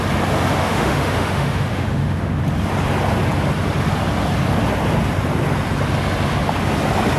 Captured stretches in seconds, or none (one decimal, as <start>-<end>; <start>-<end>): 0.0-0.6; 2.4-7.2